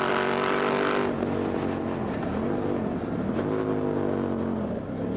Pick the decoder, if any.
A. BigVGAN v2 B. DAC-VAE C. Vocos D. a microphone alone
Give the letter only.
D